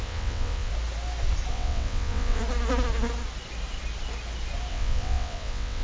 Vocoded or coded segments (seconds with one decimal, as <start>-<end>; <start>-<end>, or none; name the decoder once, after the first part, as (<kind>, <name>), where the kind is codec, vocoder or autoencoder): 0.0-0.7 (vocoder, WaveNeXt); 1.5-2.4; 4.7-5.8